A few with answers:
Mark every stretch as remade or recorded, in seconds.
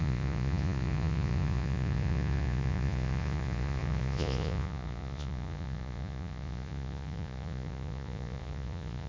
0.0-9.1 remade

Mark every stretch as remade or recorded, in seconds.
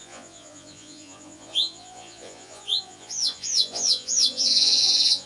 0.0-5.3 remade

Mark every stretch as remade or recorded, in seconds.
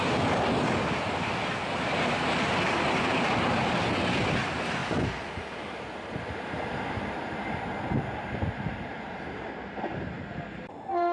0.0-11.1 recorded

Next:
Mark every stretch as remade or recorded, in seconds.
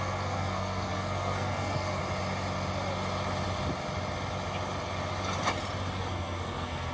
0.0-2.0 remade; 2.0-6.0 recorded; 6.0-6.9 remade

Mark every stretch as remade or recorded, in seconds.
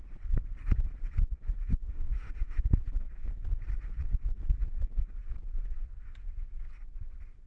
0.0-1.7 recorded; 1.7-2.7 remade; 2.7-7.5 recorded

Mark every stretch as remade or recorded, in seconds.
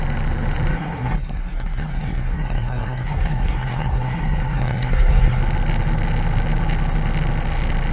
0.0-0.7 recorded; 0.7-5.4 remade; 5.4-7.9 recorded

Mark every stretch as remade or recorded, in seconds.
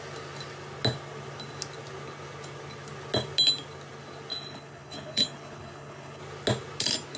0.0-4.3 recorded; 4.3-6.2 remade; 6.2-7.2 recorded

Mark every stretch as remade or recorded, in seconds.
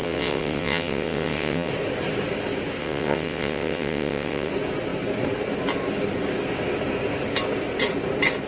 0.0-1.7 remade; 1.7-2.8 recorded; 2.8-4.5 remade; 4.5-8.5 recorded